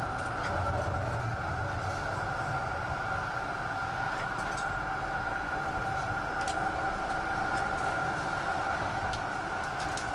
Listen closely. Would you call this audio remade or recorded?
recorded